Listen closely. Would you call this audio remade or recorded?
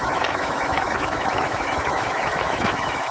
remade